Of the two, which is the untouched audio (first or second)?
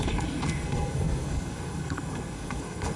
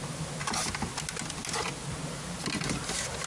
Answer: second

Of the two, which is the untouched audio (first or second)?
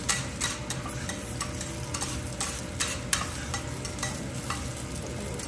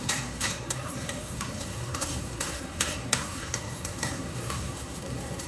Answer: first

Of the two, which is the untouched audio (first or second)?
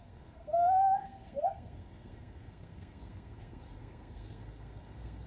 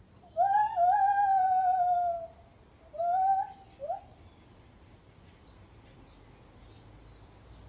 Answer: second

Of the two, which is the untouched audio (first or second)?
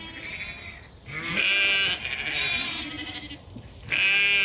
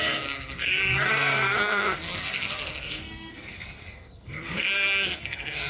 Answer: first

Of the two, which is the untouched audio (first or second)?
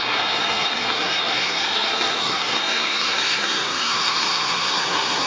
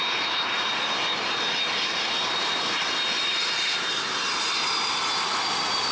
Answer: second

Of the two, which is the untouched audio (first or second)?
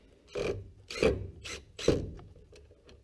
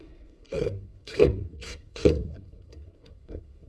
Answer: first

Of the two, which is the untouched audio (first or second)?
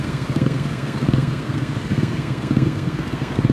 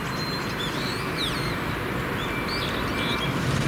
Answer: second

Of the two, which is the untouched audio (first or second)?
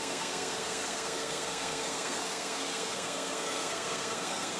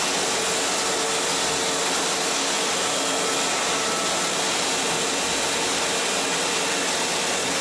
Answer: second